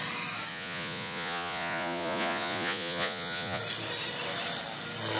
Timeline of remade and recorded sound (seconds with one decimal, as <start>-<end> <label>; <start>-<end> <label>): 0.0-0.5 recorded; 0.5-3.6 remade; 3.6-5.2 recorded